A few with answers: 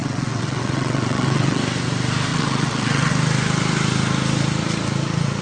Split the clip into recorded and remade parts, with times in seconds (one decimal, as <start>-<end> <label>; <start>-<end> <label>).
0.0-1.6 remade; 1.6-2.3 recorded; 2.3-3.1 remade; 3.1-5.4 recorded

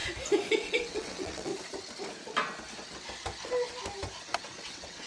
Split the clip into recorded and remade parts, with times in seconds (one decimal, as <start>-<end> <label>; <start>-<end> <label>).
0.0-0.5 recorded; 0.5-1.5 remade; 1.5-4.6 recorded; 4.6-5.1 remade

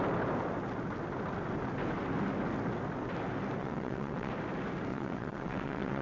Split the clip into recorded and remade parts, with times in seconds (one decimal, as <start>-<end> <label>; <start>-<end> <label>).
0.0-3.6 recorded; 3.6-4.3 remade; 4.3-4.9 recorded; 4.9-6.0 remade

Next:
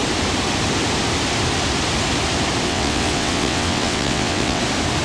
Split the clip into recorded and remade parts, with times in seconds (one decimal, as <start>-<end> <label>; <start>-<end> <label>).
0.0-2.7 recorded; 2.7-4.6 remade; 4.6-5.0 recorded

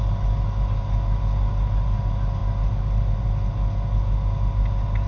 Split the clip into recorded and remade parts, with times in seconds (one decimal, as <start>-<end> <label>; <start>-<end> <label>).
0.0-5.1 recorded

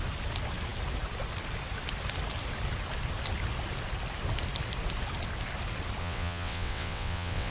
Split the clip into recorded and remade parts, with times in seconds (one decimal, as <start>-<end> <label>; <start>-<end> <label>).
0.0-6.0 recorded; 6.0-7.5 remade